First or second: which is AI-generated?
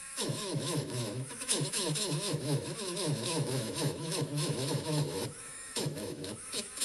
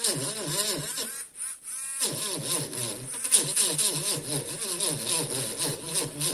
first